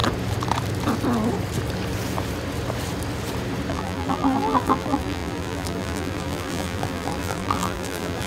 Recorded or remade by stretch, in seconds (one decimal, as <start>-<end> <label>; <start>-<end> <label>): 0.0-3.7 recorded; 3.7-8.3 remade